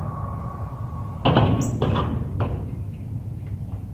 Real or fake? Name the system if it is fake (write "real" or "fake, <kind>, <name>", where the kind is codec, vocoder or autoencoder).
real